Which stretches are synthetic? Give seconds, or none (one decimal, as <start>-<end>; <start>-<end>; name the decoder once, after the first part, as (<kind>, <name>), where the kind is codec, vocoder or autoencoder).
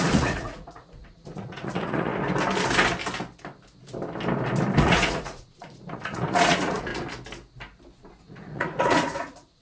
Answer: 0.0-2.1 (vocoder, Vocos); 4.8-6.9; 8.2-9.6